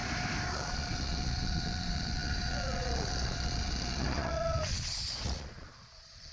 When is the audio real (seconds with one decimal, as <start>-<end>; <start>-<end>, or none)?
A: 0.0-0.5